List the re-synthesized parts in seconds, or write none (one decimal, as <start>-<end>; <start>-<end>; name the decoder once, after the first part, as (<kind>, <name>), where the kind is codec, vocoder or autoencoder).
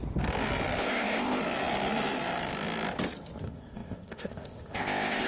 0.8-1.4 (codec, ZipCodec); 3.4-5.3